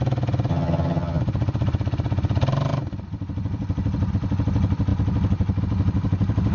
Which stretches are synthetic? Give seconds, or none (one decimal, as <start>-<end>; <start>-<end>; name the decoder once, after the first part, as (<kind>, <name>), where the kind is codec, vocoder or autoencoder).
0.5-1.2 (vocoder, HiFi-GAN)